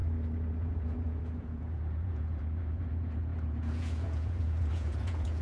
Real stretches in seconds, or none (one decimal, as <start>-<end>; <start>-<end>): 0.0-0.6